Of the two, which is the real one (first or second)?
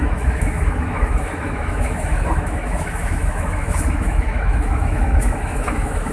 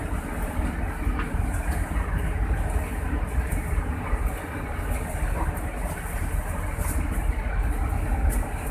second